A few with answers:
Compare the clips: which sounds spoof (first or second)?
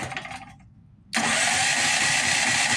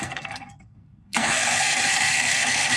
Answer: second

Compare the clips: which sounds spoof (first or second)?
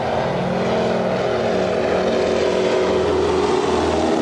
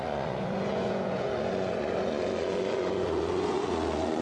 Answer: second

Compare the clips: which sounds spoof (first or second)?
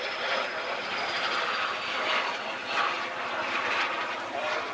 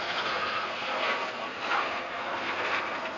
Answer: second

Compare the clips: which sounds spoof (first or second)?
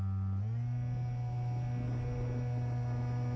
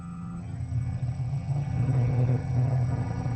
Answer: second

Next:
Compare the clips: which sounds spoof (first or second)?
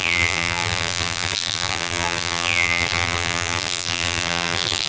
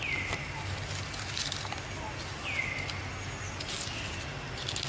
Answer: first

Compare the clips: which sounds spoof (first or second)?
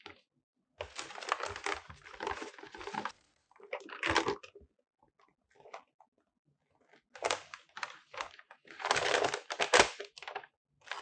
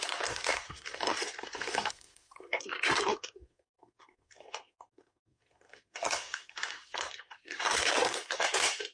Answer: second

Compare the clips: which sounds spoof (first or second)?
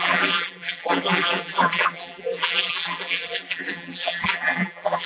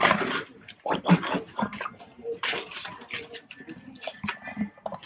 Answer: first